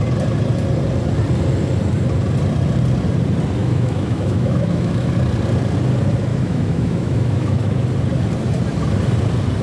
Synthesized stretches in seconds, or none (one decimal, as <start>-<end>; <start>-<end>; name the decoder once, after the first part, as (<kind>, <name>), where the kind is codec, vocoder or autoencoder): 3.6-5.1 (autoencoder, DAC-VAE); 6.3-7.8